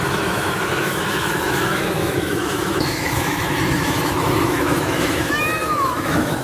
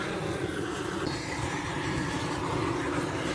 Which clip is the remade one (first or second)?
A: first